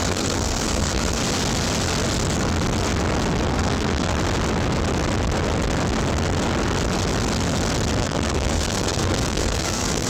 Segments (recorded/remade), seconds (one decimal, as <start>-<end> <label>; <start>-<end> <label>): 0.0-1.2 remade; 1.2-3.5 recorded; 3.5-4.1 remade; 4.1-8.0 recorded; 8.0-10.1 remade